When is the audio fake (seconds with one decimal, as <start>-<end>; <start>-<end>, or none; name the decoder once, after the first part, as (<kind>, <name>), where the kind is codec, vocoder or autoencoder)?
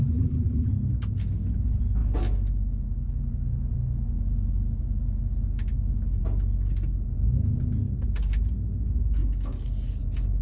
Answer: 0.0-0.7 (vocoder, BigVGAN v2)